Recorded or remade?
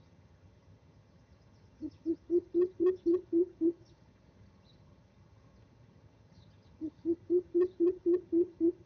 remade